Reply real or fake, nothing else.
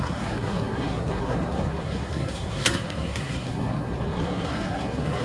fake